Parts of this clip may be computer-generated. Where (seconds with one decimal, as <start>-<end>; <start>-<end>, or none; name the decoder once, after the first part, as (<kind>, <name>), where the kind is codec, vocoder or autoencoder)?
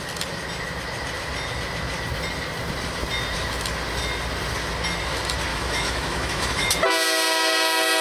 5.5-6.7 (autoencoder, DAC-VAE)